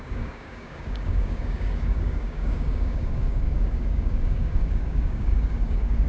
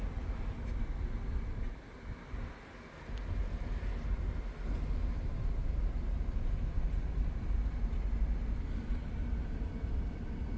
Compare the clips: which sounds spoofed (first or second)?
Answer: first